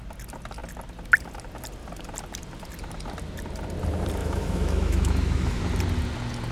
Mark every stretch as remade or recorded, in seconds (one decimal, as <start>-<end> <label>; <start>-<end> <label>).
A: 0.0-4.2 recorded; 4.2-5.6 remade; 5.6-6.5 recorded